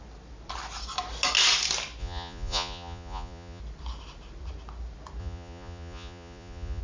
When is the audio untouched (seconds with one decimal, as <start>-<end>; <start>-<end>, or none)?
0.0-2.0; 3.6-5.2